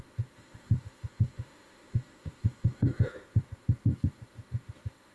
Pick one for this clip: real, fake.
fake